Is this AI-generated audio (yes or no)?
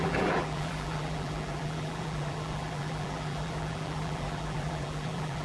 yes